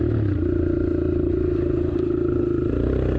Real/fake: real